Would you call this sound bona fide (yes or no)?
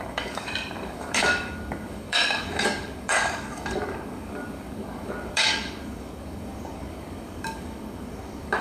no